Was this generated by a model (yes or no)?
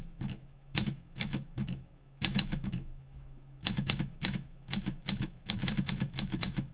yes